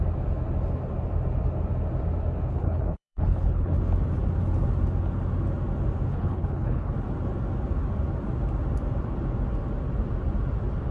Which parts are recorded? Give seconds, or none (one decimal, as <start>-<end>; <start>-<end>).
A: 0.0-2.5; 3.8-6.1; 6.9-10.9

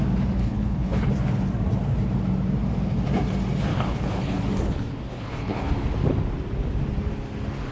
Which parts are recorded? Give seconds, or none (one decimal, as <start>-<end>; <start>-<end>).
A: 0.0-0.4; 1.1-3.7; 4.4-5.1; 5.7-7.7

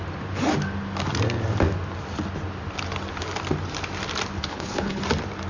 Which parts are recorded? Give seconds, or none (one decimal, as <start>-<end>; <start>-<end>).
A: 0.0-4.5; 5.0-5.5

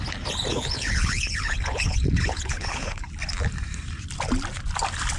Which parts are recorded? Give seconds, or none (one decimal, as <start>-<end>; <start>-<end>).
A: 0.0-0.5; 3.1-5.2